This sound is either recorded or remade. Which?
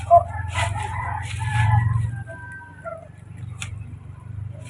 remade